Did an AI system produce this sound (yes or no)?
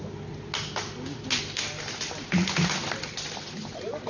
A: no